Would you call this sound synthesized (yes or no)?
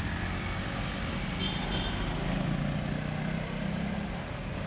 no